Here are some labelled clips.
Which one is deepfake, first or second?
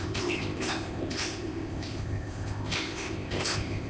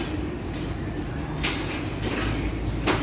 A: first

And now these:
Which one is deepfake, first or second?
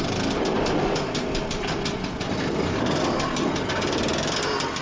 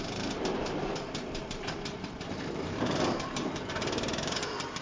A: second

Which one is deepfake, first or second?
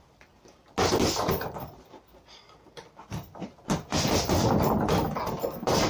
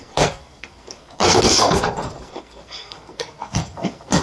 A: second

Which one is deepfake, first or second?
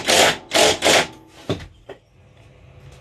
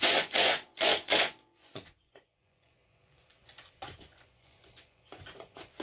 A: second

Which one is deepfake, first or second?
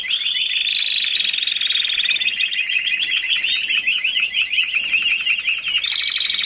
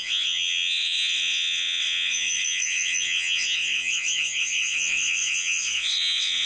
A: second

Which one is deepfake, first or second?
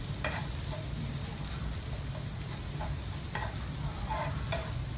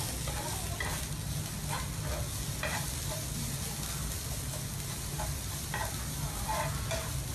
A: first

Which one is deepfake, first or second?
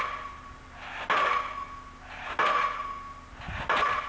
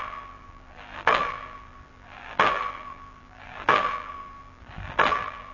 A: second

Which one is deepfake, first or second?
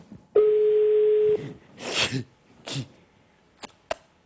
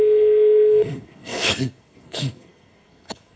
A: second